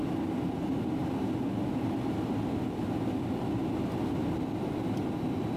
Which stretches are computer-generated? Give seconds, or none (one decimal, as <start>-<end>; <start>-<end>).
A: none